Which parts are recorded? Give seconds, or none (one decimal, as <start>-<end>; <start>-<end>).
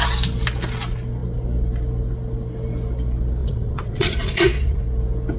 0.0-3.4; 4.8-5.4